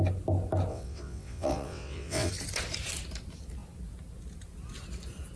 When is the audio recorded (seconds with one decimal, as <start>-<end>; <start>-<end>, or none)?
0.0-0.7; 2.3-5.4

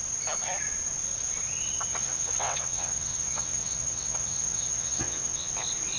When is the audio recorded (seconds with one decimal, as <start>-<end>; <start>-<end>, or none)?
0.0-1.9; 5.5-6.0